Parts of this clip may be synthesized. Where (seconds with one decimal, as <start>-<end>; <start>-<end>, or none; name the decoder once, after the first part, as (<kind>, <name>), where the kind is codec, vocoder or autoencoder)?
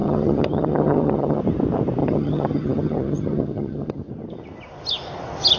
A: 0.0-1.4 (vocoder, HiFi-GAN); 2.0-4.1